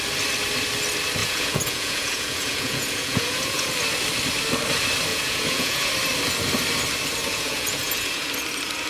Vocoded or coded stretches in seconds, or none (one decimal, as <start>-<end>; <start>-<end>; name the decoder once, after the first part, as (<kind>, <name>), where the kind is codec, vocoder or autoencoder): 1.2-3.7 (vocoder, Vocos); 5.1-5.9; 7.2-8.3